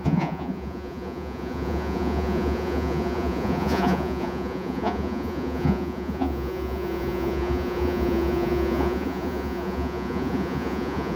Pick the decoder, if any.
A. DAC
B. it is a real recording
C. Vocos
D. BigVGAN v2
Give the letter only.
C